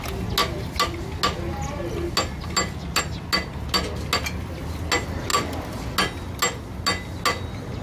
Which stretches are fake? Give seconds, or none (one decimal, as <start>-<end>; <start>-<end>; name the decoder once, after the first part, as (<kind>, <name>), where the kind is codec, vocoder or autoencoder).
none